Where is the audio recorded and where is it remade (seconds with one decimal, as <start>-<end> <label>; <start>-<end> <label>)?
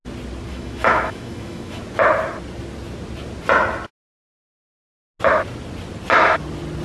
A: 0.0-0.5 recorded; 0.5-1.8 remade; 1.8-6.8 recorded